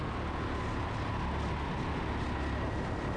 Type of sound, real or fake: real